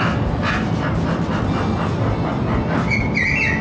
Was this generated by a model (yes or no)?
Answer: no